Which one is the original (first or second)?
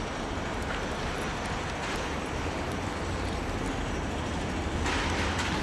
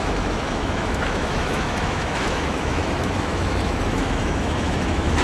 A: first